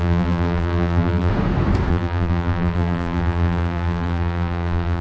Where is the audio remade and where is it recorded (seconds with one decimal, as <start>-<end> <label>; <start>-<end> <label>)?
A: 0.0-1.3 remade; 1.3-1.9 recorded; 1.9-5.0 remade